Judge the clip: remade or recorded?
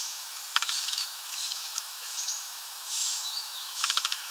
remade